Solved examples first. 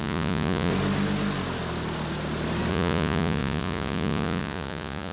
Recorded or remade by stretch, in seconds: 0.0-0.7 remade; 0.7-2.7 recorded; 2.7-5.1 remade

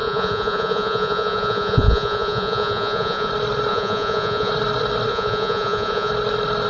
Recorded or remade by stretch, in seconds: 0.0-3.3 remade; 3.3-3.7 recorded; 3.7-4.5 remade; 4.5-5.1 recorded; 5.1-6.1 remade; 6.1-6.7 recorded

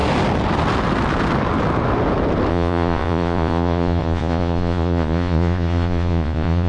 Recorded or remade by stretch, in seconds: 0.0-2.5 recorded; 2.5-6.7 remade